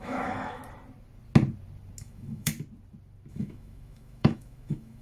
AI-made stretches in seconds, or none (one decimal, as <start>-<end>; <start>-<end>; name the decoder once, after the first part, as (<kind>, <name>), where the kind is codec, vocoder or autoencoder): 0.0-0.6 (autoencoder, DAC-VAE); 2.0-2.5; 3.3-5.0